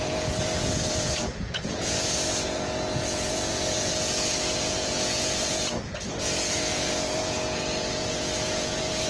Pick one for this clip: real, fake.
fake